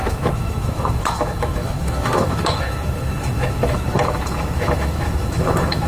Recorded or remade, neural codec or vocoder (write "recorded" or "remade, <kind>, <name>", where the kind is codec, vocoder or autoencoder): remade, autoencoder, DAC-VAE